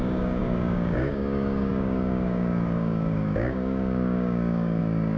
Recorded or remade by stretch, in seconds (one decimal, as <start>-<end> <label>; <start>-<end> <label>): 0.0-5.2 remade